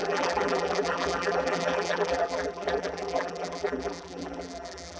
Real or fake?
fake